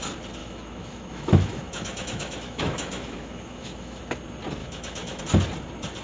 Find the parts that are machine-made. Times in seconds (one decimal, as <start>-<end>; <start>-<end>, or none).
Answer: 0.4-4.0; 4.6-5.2